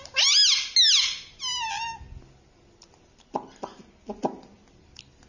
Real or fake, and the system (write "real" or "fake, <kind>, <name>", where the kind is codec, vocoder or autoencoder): real